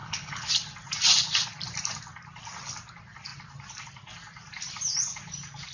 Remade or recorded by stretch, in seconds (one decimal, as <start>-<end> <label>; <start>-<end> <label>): 0.0-0.5 remade; 0.5-5.7 recorded